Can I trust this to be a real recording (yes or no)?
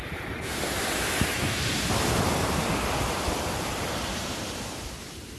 no